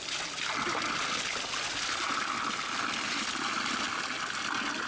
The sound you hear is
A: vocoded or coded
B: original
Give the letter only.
B